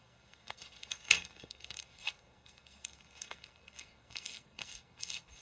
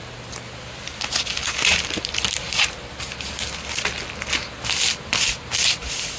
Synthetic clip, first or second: first